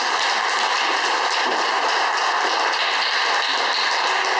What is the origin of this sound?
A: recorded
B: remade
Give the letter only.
A